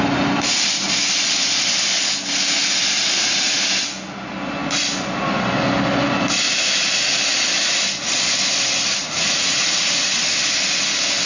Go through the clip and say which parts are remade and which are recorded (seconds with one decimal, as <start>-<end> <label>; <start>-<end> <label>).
0.0-9.0 recorded; 9.0-10.2 remade; 10.2-11.3 recorded